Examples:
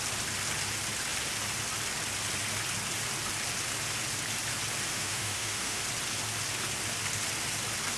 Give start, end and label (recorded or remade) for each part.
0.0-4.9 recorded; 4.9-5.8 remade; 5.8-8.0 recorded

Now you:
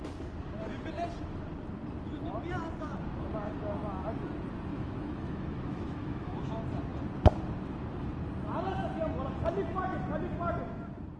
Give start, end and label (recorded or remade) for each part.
0.0-4.7 recorded; 4.7-6.5 remade; 6.5-11.2 recorded

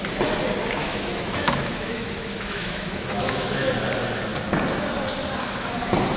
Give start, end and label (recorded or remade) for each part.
0.0-0.8 recorded; 0.8-3.7 remade; 3.7-6.2 recorded